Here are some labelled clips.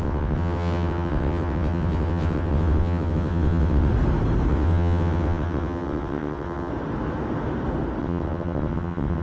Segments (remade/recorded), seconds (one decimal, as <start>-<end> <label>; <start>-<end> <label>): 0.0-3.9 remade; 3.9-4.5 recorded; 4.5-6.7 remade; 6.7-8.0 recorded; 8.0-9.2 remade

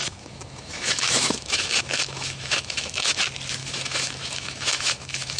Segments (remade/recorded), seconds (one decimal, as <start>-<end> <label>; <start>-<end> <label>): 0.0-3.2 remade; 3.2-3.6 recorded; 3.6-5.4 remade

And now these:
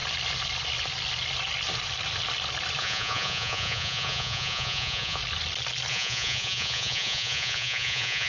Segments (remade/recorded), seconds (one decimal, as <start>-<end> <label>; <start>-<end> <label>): 0.0-2.8 recorded; 2.8-5.2 remade; 5.2-5.9 recorded; 5.9-8.3 remade

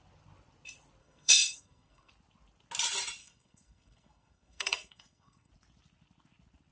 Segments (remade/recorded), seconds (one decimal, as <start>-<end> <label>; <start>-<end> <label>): 0.0-1.0 recorded; 1.0-2.1 remade; 2.1-3.2 recorded; 3.2-5.5 remade; 5.5-6.7 recorded

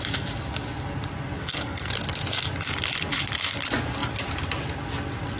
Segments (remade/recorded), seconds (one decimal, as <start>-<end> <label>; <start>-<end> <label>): 0.0-1.4 recorded; 1.4-1.9 remade; 1.9-5.4 recorded